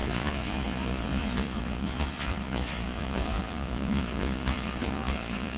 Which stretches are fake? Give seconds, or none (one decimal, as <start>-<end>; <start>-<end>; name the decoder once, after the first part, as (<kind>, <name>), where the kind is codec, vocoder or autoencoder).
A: 0.0-5.6 (vocoder, Vocos)